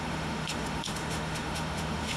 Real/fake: fake